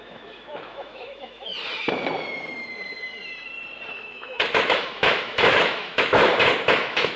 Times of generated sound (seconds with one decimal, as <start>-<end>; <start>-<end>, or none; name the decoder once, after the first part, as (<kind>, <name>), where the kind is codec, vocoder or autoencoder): 0.0-1.5 (autoencoder, DAC-VAE); 3.9-6.3; 6.8-7.2